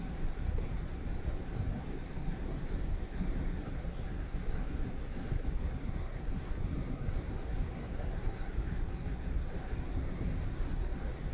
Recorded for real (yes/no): no